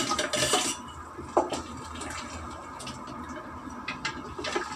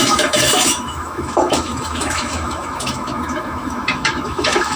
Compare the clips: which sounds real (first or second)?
first